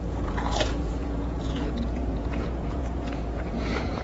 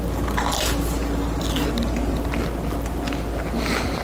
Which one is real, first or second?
second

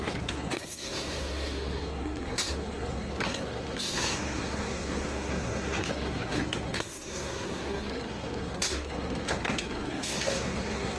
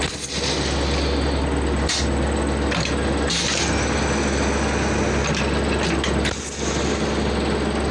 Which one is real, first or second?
second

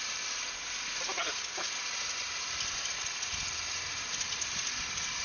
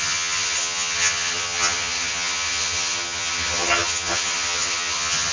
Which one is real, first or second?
first